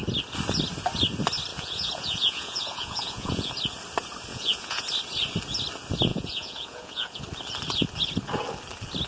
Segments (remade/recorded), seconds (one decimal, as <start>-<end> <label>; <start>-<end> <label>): 0.0-1.5 recorded; 1.5-3.5 remade; 3.5-4.3 recorded; 4.3-4.9 remade; 4.9-6.1 recorded; 6.1-7.2 remade; 7.2-9.1 recorded